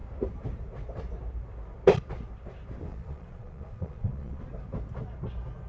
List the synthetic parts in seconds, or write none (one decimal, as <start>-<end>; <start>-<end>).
2.9-4.4